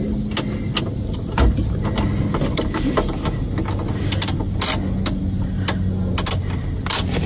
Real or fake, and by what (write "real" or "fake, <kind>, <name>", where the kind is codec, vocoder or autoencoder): real